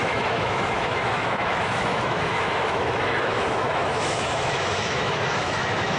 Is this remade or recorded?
remade